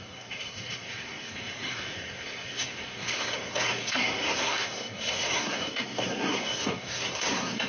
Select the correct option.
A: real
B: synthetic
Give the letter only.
B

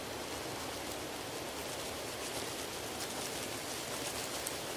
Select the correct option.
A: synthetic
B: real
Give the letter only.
B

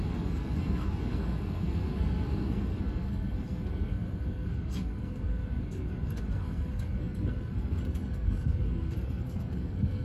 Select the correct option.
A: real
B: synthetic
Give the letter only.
B